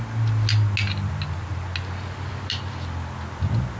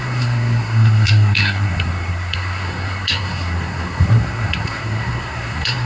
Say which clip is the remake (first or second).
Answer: second